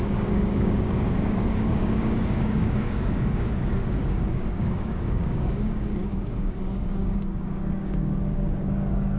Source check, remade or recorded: remade